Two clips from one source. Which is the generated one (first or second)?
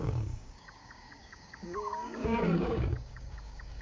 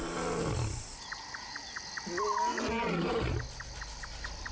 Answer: first